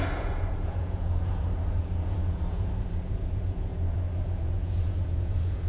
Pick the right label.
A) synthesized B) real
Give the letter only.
A